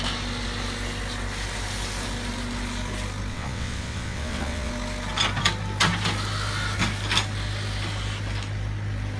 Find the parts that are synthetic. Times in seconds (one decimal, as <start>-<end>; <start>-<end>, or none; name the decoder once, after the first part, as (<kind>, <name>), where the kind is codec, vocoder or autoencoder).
3.3-4.7 (vocoder, WaveNeXt)

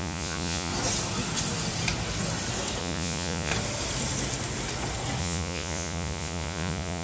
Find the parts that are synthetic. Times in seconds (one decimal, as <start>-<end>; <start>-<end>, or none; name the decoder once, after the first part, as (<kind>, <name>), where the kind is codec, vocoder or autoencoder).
0.0-0.7 (vocoder, Vocos); 2.8-3.5; 5.2-7.0

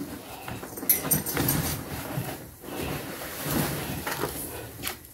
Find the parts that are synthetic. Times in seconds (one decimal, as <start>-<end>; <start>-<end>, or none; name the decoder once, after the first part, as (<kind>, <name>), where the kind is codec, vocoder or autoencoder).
1.6-5.1 (vocoder, BigVGAN v2)